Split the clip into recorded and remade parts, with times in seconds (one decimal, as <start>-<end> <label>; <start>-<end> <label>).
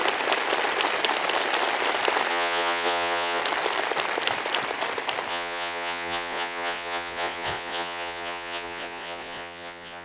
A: 0.0-2.3 recorded; 2.3-3.4 remade; 3.4-5.3 recorded; 5.3-10.0 remade